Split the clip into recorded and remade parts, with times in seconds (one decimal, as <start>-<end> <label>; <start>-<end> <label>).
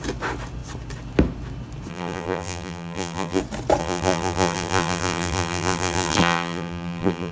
0.0-1.9 recorded; 1.9-3.4 remade; 3.4-3.8 recorded; 3.8-7.3 remade